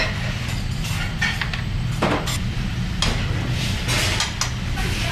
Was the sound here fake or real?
real